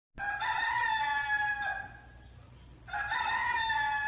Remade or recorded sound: recorded